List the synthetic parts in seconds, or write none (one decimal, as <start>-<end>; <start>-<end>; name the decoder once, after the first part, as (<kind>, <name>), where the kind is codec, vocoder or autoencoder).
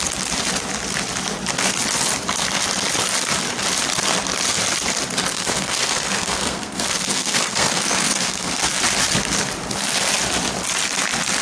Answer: 5.3-8.8 (codec, SNAC)